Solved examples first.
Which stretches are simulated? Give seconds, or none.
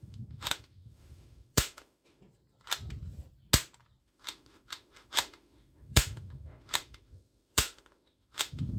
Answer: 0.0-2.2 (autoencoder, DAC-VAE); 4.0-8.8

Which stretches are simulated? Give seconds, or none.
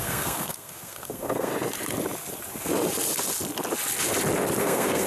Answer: 0.0-1.5 (codec, SNAC); 4.6-5.1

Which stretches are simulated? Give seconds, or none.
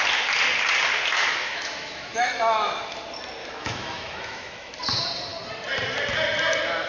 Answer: 1.1-2.8 (autoencoder, DAC-VAE); 3.4-4.8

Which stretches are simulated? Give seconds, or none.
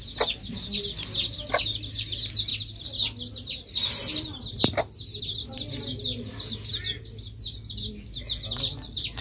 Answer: none